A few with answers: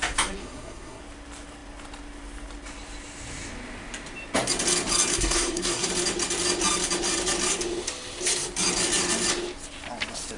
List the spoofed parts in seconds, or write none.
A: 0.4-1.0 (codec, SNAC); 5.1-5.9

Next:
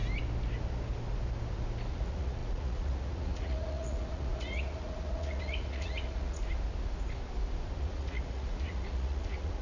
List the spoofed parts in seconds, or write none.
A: 1.9-6.4 (vocoder, Vocos); 7.8-9.6

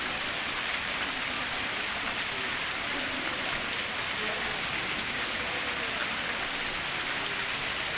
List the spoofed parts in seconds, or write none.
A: none

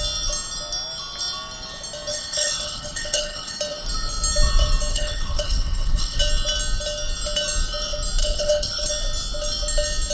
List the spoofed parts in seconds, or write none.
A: 2.1-3.6 (codec, HILCodec); 4.9-6.2; 8.2-8.9

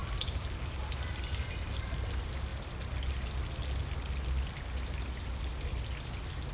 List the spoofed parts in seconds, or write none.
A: none

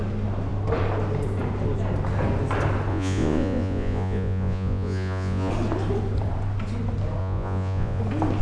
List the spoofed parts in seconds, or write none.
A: 2.9-5.5 (vocoder, Vocos); 7.2-8.0